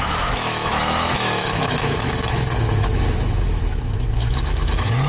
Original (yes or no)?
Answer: no